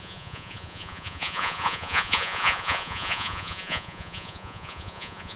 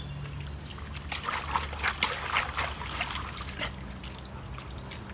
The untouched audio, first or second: second